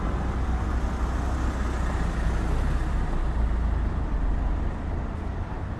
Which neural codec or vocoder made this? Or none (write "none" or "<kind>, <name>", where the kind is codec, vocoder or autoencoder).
none